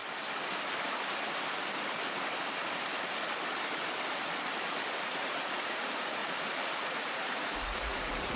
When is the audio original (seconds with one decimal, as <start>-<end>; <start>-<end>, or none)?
0.0-5.0; 6.2-6.8